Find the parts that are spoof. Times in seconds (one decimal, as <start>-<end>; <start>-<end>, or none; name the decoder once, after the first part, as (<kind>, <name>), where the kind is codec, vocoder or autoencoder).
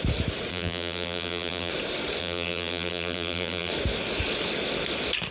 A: 0.5-1.7 (vocoder, BigVGAN v2); 2.2-3.7